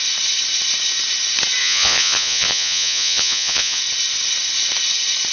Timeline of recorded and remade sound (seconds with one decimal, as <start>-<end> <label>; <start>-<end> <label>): 0.0-1.6 recorded; 1.6-3.8 remade; 3.8-5.3 recorded